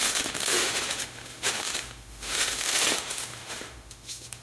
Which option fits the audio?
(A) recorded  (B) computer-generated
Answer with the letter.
B